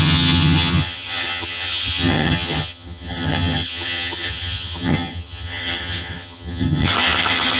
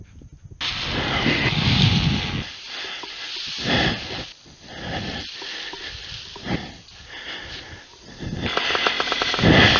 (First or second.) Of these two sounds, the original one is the second